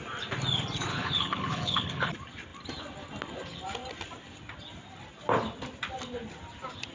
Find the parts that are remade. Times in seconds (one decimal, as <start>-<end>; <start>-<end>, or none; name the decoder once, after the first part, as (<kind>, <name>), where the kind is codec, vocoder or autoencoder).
0.9-2.1 (codec, HILCodec)